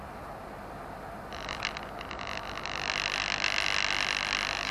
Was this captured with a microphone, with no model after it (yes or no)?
yes